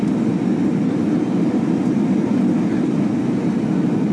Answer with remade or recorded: recorded